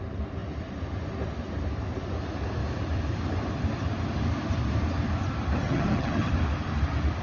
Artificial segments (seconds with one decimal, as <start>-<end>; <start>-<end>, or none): 5.6-6.3

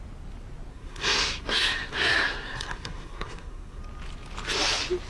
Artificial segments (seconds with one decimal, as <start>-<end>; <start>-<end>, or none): 0.7-3.8